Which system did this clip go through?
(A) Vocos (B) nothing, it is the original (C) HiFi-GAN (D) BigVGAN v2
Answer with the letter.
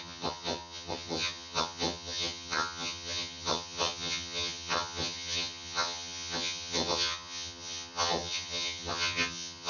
C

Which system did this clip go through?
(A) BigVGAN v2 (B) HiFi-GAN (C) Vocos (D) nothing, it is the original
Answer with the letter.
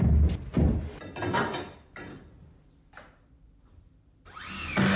D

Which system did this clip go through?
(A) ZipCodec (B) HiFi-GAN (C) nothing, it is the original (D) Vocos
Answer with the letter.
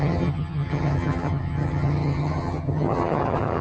B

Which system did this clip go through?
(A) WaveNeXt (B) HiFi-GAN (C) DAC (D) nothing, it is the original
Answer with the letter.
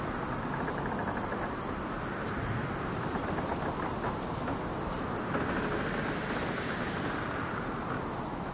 D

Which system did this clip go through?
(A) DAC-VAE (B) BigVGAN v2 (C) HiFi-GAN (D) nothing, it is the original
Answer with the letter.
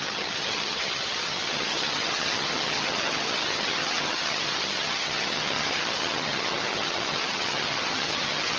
C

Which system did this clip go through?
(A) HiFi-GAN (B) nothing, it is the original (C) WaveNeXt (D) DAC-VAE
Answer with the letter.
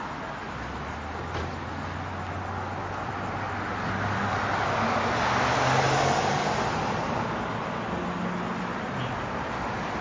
B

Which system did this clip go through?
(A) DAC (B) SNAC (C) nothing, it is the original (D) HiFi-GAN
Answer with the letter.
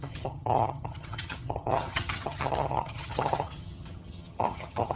D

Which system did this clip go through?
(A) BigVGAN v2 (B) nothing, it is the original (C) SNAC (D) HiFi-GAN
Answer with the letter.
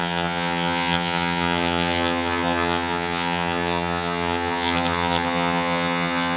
D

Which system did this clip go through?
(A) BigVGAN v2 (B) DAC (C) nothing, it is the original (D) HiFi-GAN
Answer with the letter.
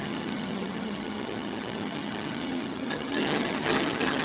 D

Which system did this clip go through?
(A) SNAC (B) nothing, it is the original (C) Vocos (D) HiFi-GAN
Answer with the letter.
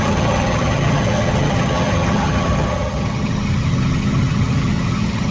D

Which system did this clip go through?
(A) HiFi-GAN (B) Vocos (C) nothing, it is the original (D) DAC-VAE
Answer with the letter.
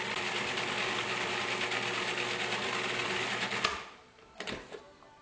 C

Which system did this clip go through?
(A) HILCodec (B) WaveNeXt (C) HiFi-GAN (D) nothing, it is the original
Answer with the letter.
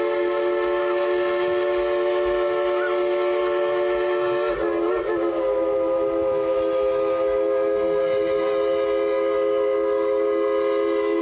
D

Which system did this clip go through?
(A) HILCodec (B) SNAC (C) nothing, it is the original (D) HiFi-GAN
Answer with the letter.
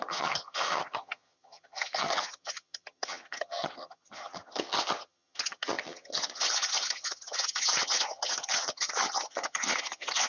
D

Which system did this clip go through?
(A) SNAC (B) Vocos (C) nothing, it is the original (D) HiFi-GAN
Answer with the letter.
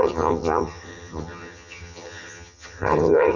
D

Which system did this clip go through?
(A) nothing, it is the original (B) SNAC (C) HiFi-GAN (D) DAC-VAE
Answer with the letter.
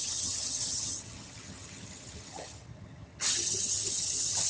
C